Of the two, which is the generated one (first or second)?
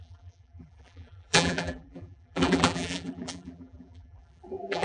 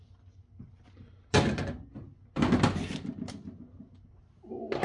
first